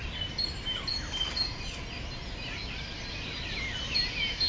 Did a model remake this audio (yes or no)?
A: no